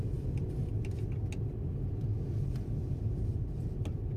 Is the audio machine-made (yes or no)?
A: no